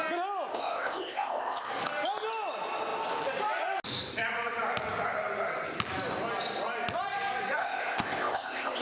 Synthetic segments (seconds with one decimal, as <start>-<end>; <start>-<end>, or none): 0.5-1.7; 7.6-8.8